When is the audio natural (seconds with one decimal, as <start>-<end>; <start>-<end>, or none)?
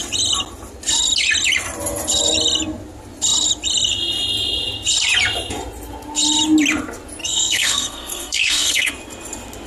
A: 0.0-7.2; 8.9-9.7